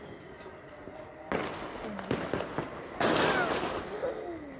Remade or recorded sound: recorded